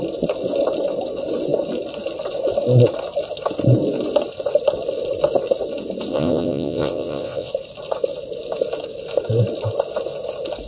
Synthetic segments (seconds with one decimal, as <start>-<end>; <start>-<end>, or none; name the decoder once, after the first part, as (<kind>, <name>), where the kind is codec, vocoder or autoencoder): 6.1-7.5 (vocoder, WaveNeXt)